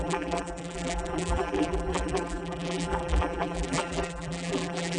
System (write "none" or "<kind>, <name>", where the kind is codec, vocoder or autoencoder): vocoder, BigVGAN v2